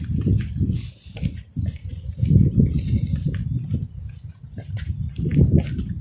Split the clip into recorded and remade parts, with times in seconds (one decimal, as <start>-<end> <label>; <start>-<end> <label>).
0.0-6.0 recorded